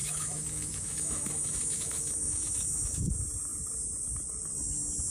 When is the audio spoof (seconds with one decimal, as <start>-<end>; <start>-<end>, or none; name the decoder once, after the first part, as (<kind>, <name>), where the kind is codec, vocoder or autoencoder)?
0.0-3.1 (autoencoder, DAC-VAE)